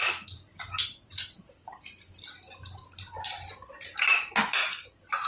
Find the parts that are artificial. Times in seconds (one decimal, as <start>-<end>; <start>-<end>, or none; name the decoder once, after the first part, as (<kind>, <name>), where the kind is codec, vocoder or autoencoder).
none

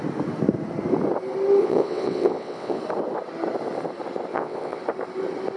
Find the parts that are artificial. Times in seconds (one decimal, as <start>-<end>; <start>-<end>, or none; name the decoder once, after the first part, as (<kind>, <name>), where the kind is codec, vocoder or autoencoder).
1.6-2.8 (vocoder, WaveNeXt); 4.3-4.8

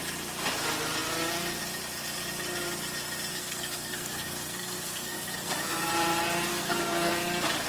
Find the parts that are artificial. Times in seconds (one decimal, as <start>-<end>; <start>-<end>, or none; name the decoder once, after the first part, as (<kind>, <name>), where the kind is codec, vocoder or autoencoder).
3.3-5.9 (codec, SNAC); 6.5-7.1

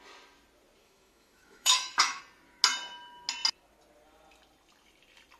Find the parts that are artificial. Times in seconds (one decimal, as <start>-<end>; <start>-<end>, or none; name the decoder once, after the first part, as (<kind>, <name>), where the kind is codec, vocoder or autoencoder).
0.8-2.2 (autoencoder, DAC-VAE)

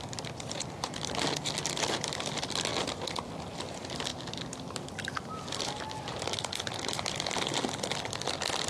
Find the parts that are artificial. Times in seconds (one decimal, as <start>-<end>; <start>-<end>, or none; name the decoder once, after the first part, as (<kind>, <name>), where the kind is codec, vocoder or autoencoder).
none

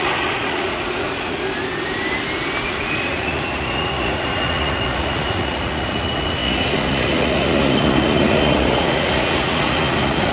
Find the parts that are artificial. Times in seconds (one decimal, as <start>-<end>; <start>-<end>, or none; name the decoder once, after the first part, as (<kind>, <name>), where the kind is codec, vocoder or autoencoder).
0.0-1.4 (vocoder, Vocos); 2.6-10.3